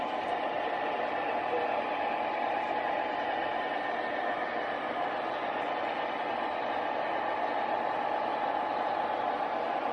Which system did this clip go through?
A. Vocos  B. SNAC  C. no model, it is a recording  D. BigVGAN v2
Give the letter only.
C